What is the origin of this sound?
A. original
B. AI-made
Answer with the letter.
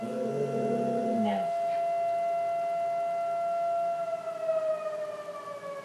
A